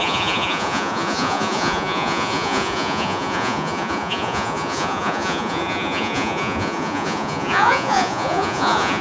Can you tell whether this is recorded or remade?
remade